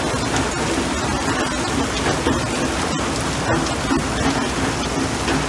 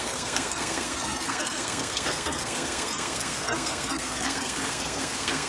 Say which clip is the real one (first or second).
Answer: first